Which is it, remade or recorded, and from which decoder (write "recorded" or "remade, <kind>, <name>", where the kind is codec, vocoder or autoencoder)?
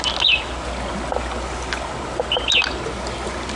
recorded